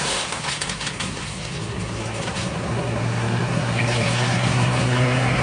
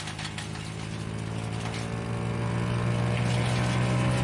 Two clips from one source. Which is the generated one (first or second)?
first